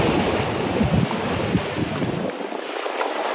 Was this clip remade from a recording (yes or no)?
no